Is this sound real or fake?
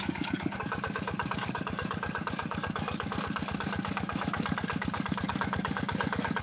fake